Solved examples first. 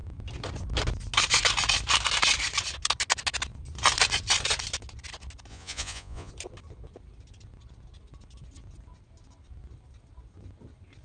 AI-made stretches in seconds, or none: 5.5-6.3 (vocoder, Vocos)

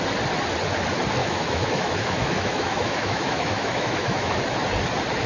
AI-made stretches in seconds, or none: 1.2-4.4 (autoencoder, DAC-VAE)

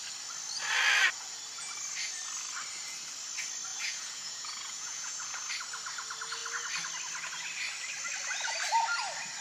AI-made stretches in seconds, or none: 3.7-5.5 (vocoder, Vocos)

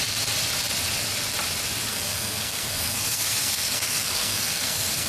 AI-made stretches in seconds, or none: 1.9-5.1 (codec, SNAC)

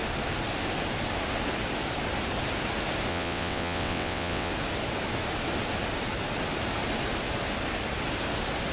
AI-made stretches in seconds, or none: 3.1-4.5 (vocoder, WaveNeXt)

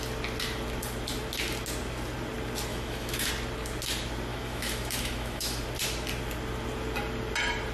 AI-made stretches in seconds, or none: 2.7-3.3 (autoencoder, DAC-VAE); 4.3-5.6

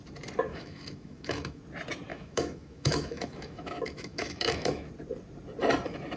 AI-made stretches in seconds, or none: 0.5-1.6 (autoencoder, DAC-VAE); 2.1-4.9